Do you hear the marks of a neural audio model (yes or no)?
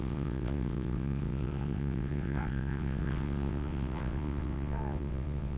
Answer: yes